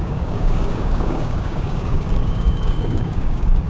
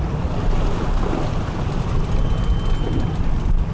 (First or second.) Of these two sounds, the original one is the second